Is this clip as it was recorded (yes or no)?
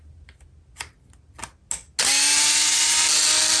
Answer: yes